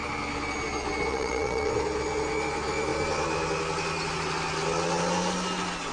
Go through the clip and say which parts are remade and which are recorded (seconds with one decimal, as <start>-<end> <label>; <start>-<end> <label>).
0.0-1.1 recorded; 1.1-1.7 remade; 1.7-5.9 recorded